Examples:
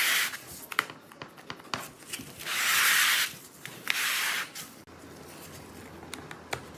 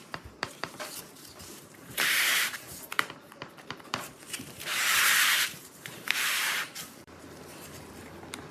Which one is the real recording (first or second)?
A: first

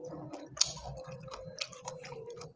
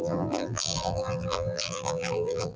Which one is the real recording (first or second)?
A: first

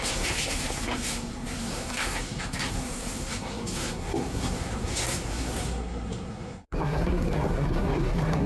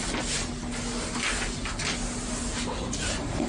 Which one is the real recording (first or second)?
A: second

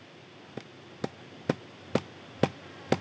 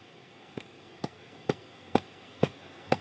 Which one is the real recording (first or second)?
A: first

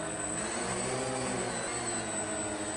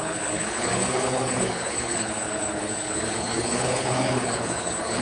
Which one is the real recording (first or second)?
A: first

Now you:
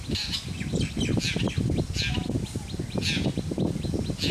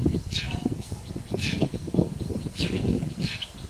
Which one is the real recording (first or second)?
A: first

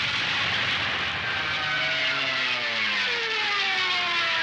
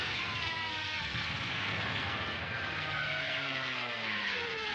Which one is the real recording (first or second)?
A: first